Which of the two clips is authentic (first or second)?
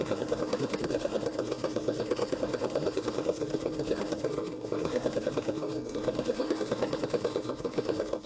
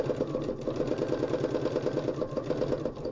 second